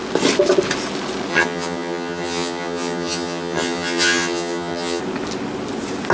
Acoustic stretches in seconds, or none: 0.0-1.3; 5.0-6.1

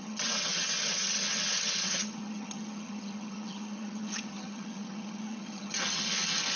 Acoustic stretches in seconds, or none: none

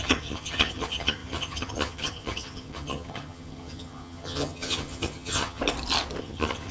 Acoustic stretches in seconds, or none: 5.6-6.2

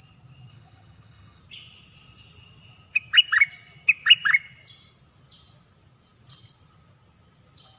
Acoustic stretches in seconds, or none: 0.0-0.5; 1.4-7.8